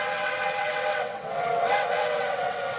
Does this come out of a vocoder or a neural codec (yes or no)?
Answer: yes